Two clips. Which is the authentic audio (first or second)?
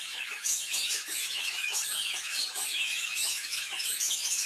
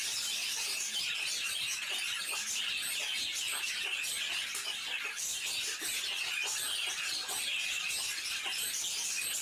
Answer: second